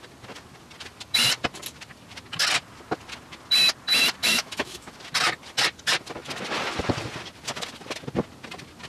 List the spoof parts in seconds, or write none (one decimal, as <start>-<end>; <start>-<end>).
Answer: 4.2-4.9